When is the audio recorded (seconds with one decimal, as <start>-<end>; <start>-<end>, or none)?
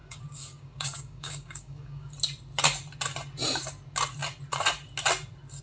2.1-5.6